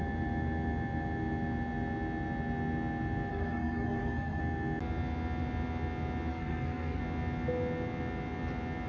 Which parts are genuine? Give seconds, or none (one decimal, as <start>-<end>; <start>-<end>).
0.0-3.3; 4.4-6.3; 7.0-8.9